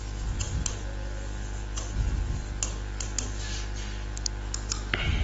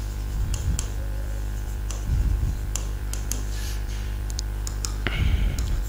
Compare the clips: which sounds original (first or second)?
first